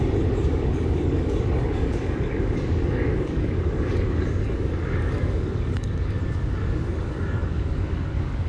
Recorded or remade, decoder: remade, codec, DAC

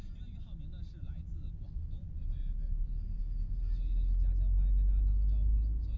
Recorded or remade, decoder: recorded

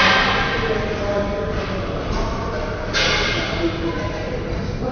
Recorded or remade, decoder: recorded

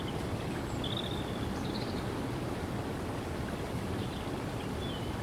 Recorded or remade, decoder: recorded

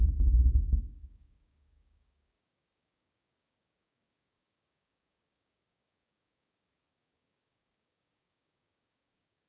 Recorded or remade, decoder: remade, codec, DAC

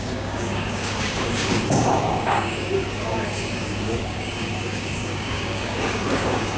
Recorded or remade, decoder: remade, codec, DAC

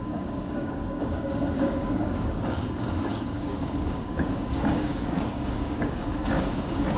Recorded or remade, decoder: remade, codec, DAC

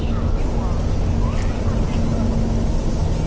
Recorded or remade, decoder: recorded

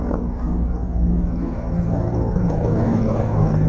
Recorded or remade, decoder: remade, codec, DAC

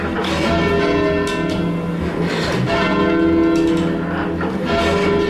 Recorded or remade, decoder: recorded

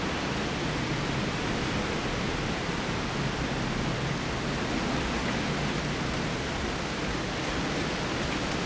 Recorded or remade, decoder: recorded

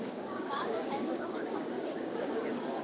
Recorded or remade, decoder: remade, codec, DAC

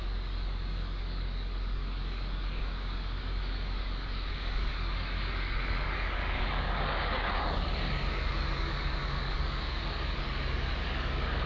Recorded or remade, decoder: remade, codec, DAC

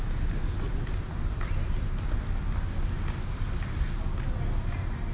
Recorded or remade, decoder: recorded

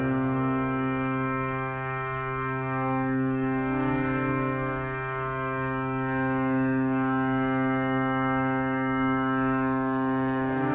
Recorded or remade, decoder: remade, codec, DAC